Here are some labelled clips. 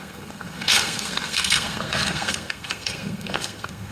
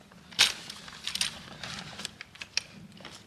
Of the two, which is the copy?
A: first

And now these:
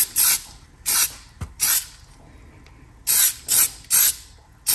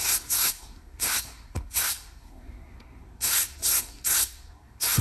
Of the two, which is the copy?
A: second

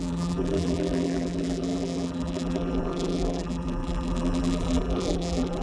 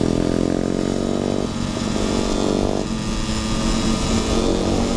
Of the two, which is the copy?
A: first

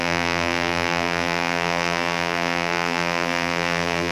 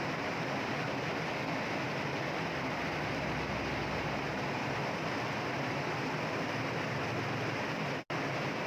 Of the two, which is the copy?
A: first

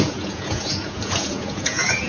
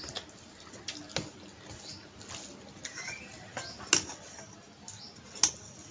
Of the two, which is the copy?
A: first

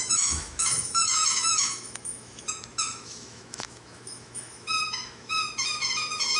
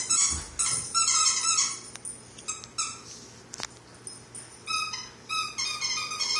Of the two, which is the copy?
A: first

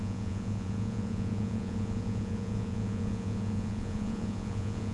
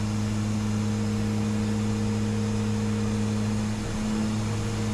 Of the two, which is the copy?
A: first